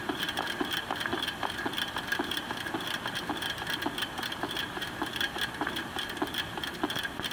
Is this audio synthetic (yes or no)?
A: no